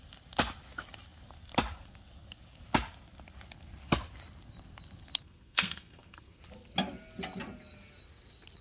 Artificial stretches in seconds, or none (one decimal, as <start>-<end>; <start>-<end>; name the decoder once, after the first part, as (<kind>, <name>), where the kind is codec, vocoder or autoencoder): 5.2-6.4 (codec, SNAC)